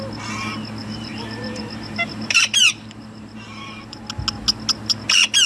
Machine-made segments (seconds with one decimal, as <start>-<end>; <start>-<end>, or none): 0.8-4.0